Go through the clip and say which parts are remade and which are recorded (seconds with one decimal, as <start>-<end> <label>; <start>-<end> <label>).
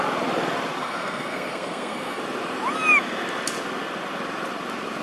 0.0-0.8 recorded; 0.8-2.2 remade; 2.2-5.0 recorded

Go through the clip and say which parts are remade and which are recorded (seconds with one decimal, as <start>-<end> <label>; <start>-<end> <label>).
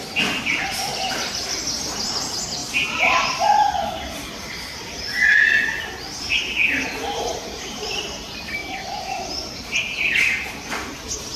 0.0-7.3 recorded; 7.3-8.0 remade; 8.0-11.4 recorded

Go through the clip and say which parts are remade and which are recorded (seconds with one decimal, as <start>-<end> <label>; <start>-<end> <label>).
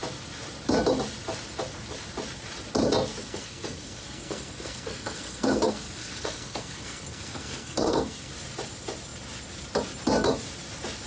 0.0-3.1 recorded; 3.1-8.3 remade; 8.3-11.1 recorded